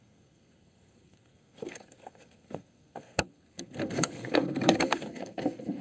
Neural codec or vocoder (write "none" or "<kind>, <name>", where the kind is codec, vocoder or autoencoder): codec, SNAC